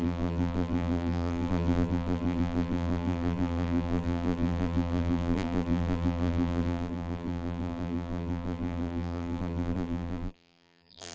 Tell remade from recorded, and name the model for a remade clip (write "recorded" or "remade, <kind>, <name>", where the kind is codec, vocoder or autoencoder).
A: remade, vocoder, BigVGAN v2